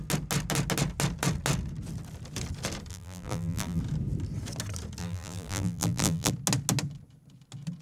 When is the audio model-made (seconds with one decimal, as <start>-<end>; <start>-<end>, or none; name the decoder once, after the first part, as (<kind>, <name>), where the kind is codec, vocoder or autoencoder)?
2.9-3.8 (vocoder, BigVGAN v2); 5.0-6.3

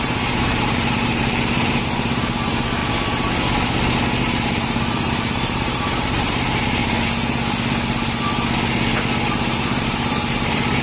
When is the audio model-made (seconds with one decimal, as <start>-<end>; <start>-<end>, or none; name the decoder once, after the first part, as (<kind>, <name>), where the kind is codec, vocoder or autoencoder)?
0.0-2.8 (vocoder, BigVGAN v2); 4.2-6.8; 9.8-10.8

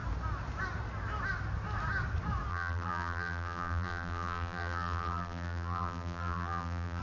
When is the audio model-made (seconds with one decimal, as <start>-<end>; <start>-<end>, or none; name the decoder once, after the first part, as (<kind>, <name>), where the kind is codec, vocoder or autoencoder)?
2.5-7.0 (vocoder, BigVGAN v2)

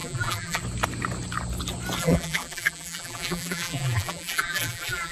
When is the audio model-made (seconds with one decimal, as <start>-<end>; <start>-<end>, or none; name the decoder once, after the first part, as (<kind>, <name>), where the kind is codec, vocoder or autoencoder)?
0.0-0.6 (vocoder, BigVGAN v2); 2.0-5.1

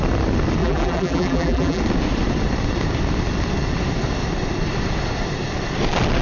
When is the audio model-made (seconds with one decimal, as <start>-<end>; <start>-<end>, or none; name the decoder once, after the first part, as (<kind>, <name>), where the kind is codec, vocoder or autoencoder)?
0.6-1.8 (vocoder, BigVGAN v2)